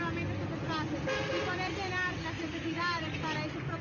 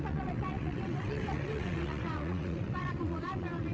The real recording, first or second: first